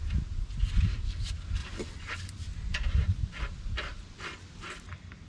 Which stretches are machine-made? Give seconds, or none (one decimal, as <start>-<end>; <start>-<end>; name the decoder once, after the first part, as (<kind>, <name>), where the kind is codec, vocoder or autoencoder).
1.6-3.4 (vocoder, BigVGAN v2)